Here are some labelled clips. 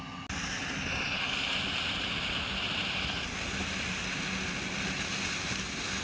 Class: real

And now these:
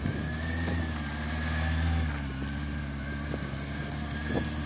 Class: real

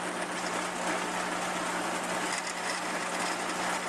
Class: real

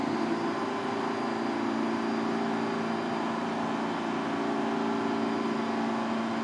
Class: real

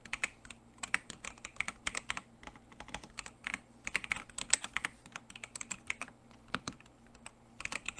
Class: real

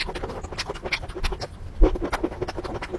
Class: real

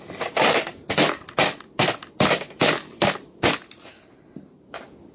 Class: real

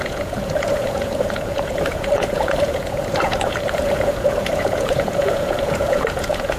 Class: fake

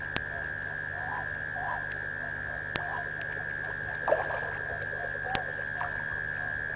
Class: real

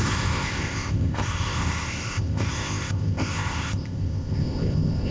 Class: fake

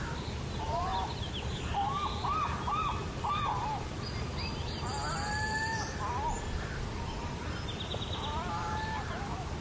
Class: real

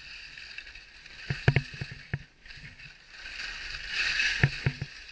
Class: real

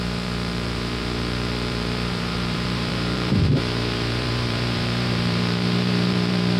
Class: fake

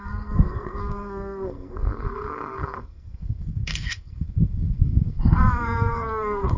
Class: fake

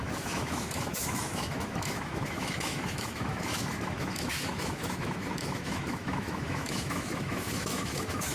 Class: fake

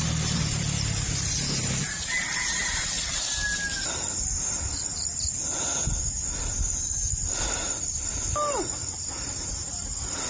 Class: real